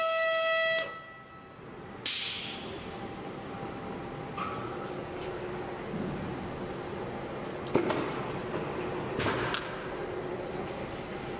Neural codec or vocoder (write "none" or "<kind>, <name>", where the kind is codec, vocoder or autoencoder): none